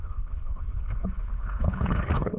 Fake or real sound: fake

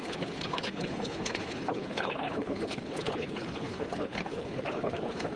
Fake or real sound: fake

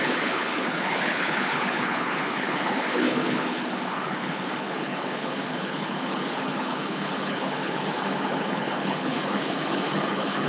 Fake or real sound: fake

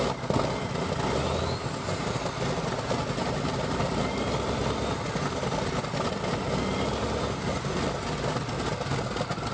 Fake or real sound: real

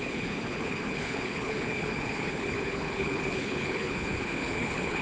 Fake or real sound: fake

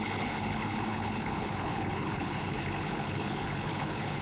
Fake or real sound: fake